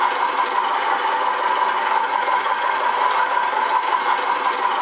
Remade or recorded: recorded